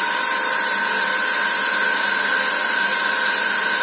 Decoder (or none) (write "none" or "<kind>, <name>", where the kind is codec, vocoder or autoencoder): none